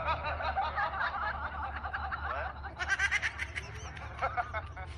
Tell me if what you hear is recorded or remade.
recorded